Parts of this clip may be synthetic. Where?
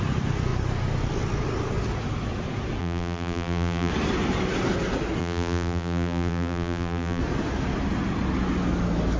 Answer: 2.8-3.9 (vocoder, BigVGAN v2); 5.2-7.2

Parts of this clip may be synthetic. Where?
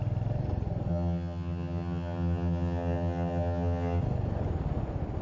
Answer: 0.9-4.0 (vocoder, HiFi-GAN)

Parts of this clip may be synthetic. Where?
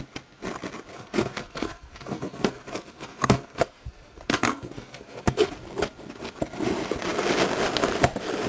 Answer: 0.9-5.5 (codec, SNAC)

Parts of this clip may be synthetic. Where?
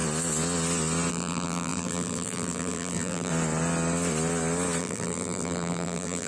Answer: 1.1-3.3 (vocoder, BigVGAN v2); 4.8-6.3